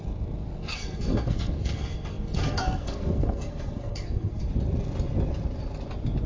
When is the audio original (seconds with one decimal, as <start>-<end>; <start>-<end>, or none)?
0.0-0.6; 4.4-6.3